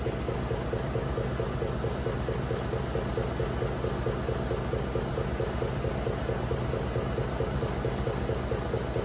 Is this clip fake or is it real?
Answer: real